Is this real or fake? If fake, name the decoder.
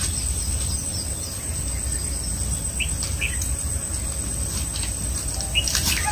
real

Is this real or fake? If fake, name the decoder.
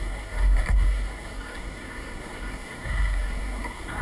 fake, codec, SNAC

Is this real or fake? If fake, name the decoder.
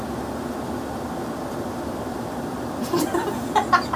fake, vocoder, BigVGAN v2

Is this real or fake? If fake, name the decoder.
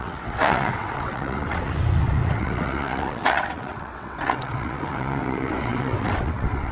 fake, vocoder, WaveNeXt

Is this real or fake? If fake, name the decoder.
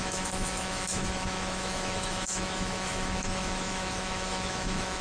fake, autoencoder, DAC-VAE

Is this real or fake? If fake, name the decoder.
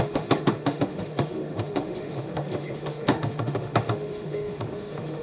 fake, autoencoder, DAC-VAE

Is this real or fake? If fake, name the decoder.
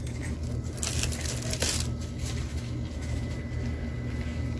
real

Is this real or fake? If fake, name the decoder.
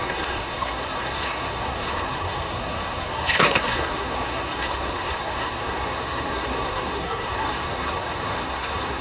fake, codec, SNAC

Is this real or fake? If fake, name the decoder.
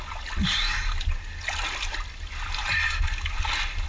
real